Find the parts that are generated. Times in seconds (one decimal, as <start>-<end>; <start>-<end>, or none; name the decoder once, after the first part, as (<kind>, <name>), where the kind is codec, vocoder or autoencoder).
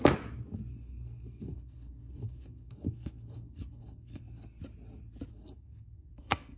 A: 0.7-4.6 (codec, SNAC); 5.3-6.6